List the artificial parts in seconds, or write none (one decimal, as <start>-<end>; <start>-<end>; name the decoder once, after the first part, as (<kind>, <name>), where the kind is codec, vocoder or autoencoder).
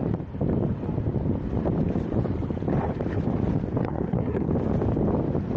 3.8-4.5 (codec, SNAC)